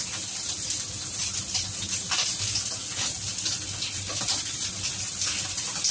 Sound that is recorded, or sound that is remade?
recorded